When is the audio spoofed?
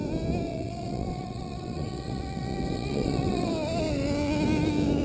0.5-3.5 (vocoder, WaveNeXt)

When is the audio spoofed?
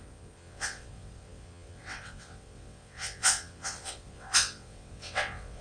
0.0-5.6 (vocoder, WaveNeXt)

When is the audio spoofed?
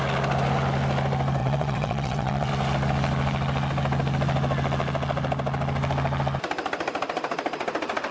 1.4-2.5 (vocoder, WaveNeXt)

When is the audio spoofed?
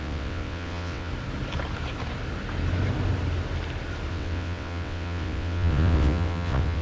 0.0-1.1 (vocoder, WaveNeXt); 4.1-6.8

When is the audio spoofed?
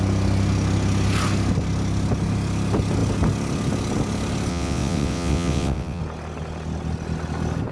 4.5-6.0 (vocoder, WaveNeXt)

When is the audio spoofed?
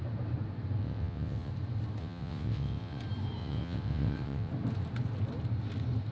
0.8-1.5 (vocoder, WaveNeXt); 2.0-3.0; 3.4-4.5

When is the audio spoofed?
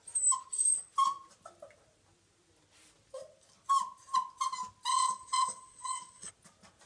4.9-6.3 (vocoder, WaveNeXt)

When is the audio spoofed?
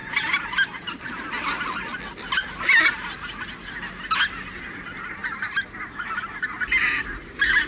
none